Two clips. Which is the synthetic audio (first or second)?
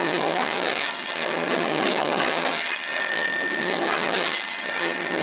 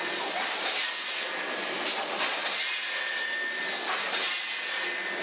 first